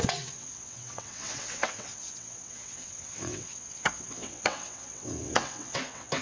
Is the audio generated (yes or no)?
yes